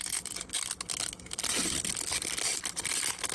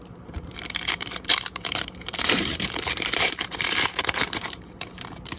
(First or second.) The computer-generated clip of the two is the second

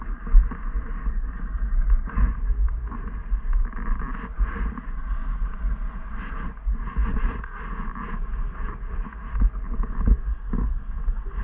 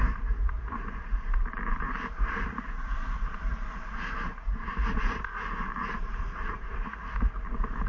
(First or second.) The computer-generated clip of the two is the second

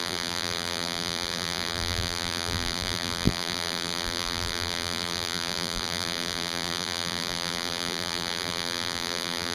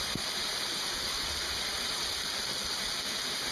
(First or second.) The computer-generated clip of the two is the first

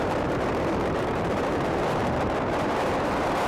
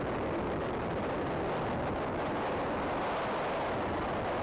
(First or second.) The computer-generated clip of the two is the first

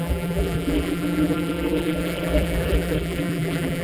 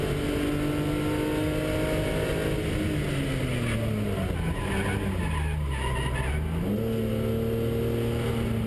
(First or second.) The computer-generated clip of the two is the first